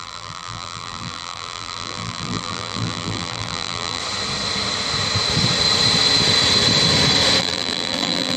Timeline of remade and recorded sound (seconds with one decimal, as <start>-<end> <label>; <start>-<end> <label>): 0.0-4.0 remade; 4.0-7.4 recorded; 7.4-8.4 remade